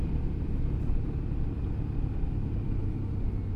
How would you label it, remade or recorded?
recorded